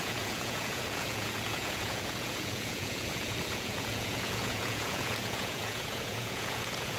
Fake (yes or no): yes